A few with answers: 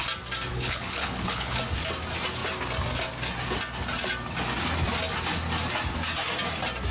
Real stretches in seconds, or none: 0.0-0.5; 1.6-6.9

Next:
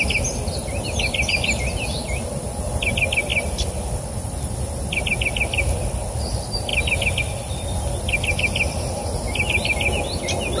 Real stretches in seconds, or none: 0.0-10.6